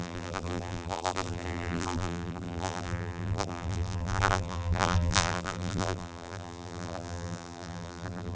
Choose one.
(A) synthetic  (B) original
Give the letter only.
A